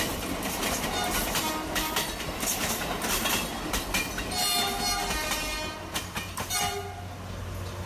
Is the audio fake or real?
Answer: real